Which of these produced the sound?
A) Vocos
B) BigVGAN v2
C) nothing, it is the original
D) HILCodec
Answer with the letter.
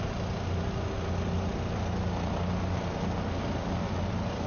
C